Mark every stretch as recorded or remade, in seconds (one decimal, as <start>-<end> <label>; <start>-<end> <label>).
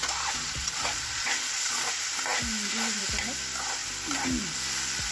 0.0-1.9 remade; 1.9-5.1 recorded